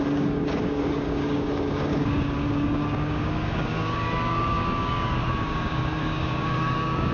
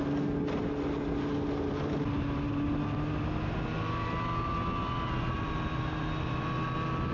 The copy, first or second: first